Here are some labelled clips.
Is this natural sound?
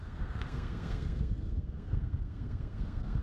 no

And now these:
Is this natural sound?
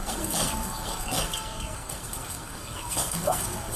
no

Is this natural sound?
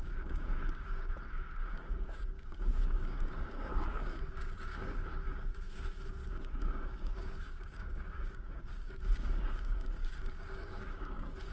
no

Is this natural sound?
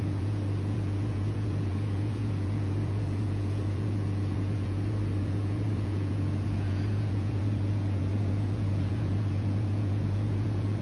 no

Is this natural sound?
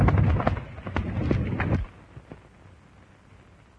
yes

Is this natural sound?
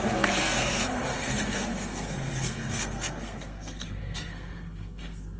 no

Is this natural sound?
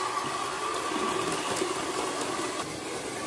yes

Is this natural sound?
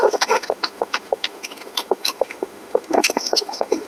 no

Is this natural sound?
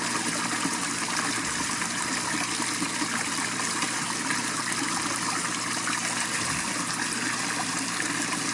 yes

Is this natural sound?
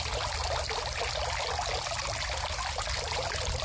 yes